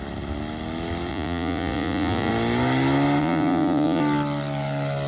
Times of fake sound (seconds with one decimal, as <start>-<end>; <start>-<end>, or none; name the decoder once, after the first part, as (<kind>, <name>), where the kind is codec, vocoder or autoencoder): 1.1-2.3 (vocoder, Vocos); 3.2-4.0